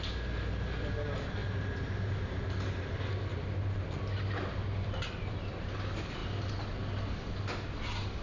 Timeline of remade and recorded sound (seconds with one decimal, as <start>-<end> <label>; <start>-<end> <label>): 0.0-8.2 recorded

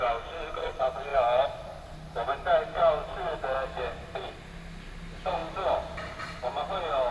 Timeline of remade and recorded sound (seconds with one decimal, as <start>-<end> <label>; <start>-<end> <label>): 0.0-7.1 recorded

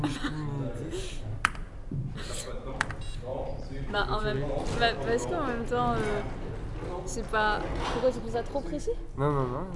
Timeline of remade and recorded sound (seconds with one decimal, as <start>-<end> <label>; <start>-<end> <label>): 0.0-3.3 recorded; 3.3-4.2 remade; 4.2-9.8 recorded

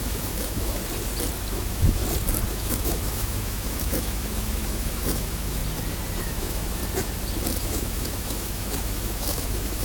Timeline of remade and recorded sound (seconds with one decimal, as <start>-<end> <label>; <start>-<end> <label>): 0.0-0.8 remade; 0.8-1.5 recorded; 1.5-2.0 remade; 2.0-2.5 recorded; 2.5-5.6 remade; 5.6-6.2 recorded; 6.2-6.8 remade; 6.8-7.6 recorded; 7.6-9.8 remade

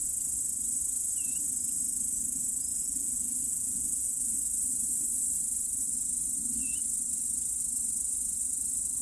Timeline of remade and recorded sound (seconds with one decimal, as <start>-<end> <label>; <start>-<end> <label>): 0.0-2.7 recorded; 2.7-4.3 remade; 4.3-9.0 recorded